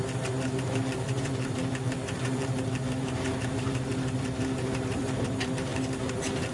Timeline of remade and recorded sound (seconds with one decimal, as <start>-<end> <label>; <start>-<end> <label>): 0.0-6.5 remade